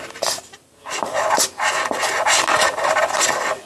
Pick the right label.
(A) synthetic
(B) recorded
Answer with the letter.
B